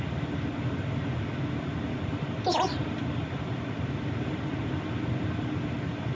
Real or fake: real